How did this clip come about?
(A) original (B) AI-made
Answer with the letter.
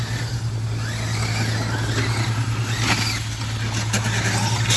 A